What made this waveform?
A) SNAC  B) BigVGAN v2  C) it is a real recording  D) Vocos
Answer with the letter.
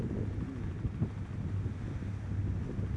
C